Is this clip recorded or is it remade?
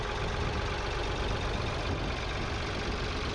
recorded